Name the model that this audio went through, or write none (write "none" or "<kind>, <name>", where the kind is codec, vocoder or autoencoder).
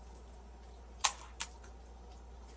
none